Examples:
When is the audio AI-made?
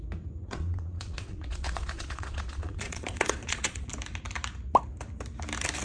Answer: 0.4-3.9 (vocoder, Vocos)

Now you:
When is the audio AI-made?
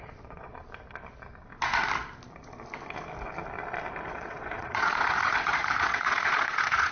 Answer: 0.0-0.5 (vocoder, Vocos); 4.1-6.9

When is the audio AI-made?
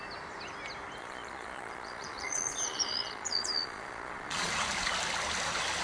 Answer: 1.0-4.5 (vocoder, Vocos)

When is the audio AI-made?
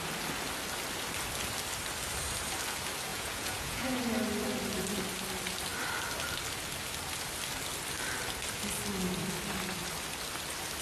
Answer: 3.1-4.0 (vocoder, Vocos)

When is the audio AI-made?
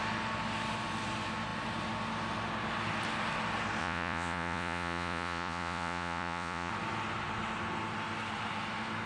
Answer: 3.8-6.7 (vocoder, Vocos)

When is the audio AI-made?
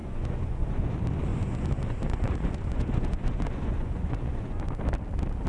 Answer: 0.0-0.9 (vocoder, Vocos); 1.3-4.6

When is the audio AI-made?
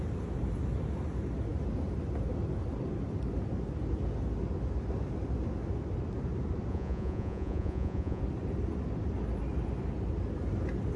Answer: 6.7-8.2 (vocoder, Vocos)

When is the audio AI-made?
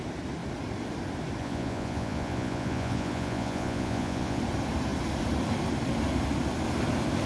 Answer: 1.4-4.4 (vocoder, Vocos)